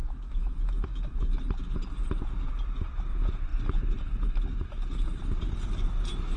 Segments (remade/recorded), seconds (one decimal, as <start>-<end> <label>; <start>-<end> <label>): 0.0-1.2 remade; 1.2-6.4 recorded